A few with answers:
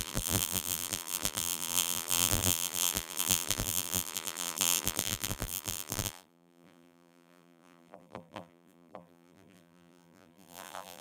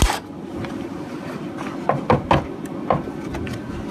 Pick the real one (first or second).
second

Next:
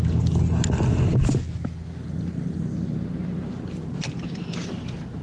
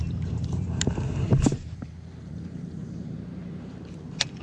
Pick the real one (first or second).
first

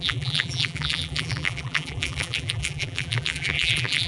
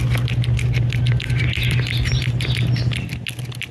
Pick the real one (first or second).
second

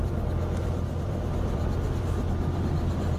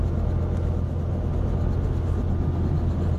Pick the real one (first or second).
second